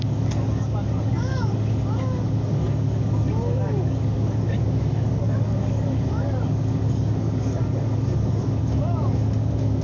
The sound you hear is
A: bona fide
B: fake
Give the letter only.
B